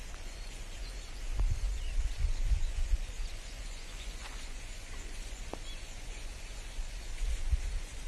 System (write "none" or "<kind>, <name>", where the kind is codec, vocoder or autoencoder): vocoder, Vocos